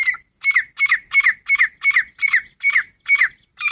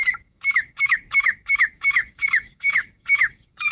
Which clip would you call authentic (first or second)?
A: first